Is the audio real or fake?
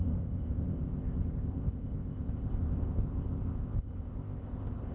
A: fake